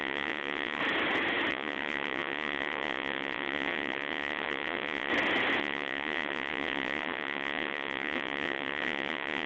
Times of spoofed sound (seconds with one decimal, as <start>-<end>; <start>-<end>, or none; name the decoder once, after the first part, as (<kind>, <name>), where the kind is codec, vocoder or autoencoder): 0.0-0.8 (vocoder, WaveNeXt); 1.5-5.1; 5.6-9.5

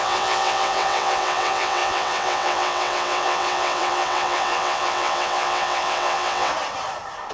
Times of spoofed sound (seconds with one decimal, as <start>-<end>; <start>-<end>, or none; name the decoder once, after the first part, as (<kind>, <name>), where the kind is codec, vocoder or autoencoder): 0.0-6.5 (vocoder, WaveNeXt)

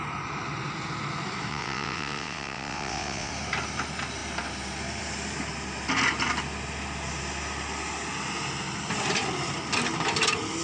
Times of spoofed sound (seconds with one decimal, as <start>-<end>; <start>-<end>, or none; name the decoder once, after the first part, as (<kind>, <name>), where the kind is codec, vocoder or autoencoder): 1.5-3.3 (vocoder, WaveNeXt)

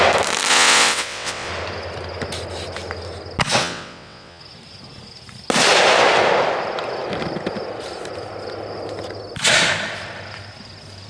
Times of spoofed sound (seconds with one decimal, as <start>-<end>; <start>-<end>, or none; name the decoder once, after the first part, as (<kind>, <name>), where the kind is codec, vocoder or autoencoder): 0.5-1.5 (vocoder, WaveNeXt); 3.6-4.4

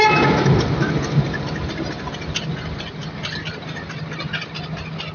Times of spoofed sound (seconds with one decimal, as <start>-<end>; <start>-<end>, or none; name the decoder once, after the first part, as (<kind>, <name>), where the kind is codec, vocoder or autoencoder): none

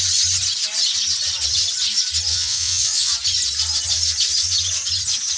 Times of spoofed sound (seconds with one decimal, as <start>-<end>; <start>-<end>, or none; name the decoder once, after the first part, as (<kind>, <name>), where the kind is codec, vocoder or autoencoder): 2.3-3.1 (vocoder, WaveNeXt)

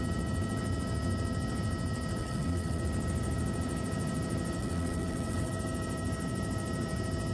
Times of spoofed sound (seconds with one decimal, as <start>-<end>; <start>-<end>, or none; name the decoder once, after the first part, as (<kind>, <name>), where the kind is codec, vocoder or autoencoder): 2.2-2.8 (vocoder, WaveNeXt); 4.6-5.5